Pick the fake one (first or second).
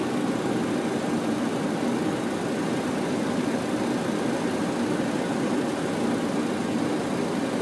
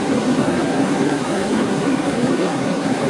second